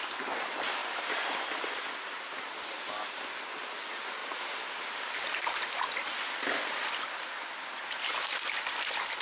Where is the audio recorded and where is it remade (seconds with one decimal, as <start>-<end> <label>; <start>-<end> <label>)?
0.0-9.2 recorded